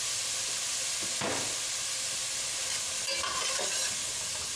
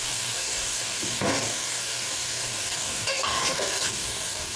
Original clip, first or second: first